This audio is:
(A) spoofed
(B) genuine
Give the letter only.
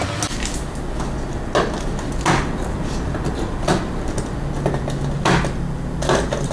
B